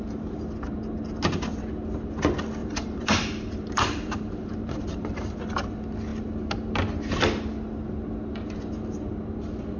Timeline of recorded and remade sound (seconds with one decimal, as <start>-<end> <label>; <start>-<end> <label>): 0.0-2.6 recorded; 2.6-5.4 remade; 5.4-9.8 recorded